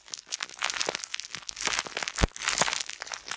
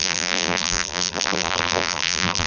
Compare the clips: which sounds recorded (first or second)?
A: first